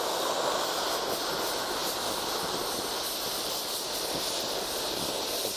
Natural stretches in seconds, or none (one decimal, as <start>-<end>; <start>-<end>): 0.0-5.6

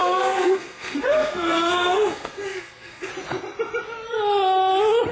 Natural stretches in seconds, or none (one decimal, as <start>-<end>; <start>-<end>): 3.1-5.1

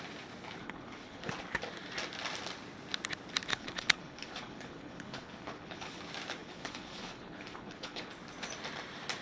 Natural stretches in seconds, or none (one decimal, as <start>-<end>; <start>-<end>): 0.0-0.6; 1.3-3.5; 6.0-6.4; 8.1-9.2

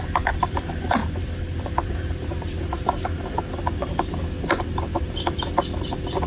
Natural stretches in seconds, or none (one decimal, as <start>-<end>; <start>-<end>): 0.0-6.3

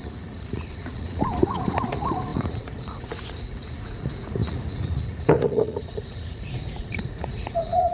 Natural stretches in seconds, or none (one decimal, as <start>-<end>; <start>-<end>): none

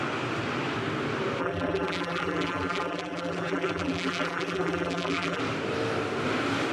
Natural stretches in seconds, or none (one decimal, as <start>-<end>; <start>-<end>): 0.0-1.4; 5.4-6.7